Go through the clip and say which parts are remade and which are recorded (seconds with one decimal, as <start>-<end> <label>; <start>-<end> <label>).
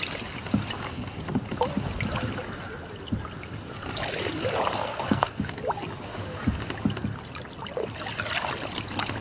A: 0.0-4.8 recorded; 4.8-5.4 remade; 5.4-9.2 recorded